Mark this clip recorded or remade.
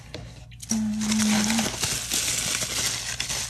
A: recorded